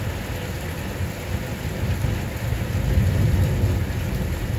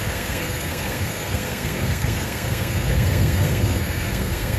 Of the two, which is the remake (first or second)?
second